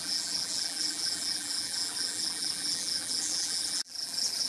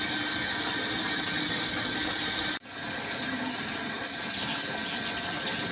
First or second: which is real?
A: second